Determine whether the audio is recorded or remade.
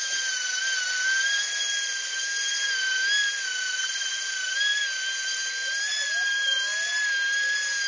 recorded